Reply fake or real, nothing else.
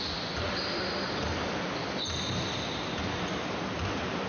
real